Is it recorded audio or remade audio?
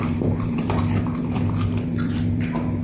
remade